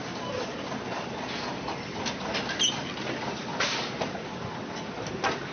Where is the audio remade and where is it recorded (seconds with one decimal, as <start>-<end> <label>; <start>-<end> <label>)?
0.0-5.5 recorded